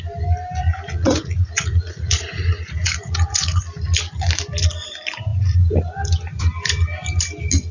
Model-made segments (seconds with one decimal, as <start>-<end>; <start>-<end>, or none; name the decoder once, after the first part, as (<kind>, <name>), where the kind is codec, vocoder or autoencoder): 0.6-3.6 (vocoder, Vocos)